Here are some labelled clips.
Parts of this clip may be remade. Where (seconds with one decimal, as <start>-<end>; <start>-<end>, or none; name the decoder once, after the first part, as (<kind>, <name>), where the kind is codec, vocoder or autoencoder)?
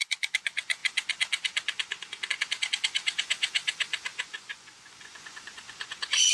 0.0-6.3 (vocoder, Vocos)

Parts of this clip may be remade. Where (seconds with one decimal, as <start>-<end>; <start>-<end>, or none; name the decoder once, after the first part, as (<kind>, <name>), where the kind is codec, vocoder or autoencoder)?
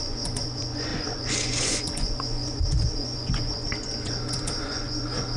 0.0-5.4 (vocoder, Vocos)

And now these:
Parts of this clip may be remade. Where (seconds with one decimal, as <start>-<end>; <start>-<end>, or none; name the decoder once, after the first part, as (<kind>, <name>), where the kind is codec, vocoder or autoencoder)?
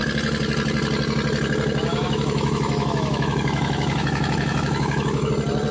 1.9-5.3 (autoencoder, DAC-VAE)